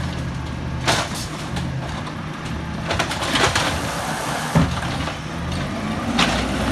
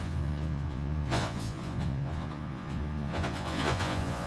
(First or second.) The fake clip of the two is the second